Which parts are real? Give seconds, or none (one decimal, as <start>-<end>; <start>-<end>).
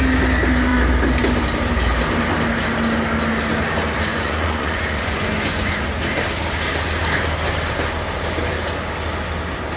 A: 0.0-4.1; 5.7-9.8